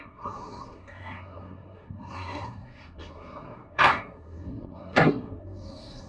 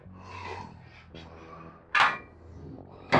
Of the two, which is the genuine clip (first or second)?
second